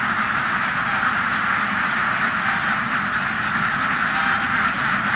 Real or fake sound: real